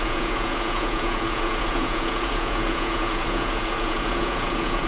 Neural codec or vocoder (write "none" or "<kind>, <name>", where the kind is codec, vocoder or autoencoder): vocoder, Vocos